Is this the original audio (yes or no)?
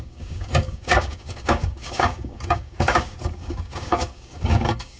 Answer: no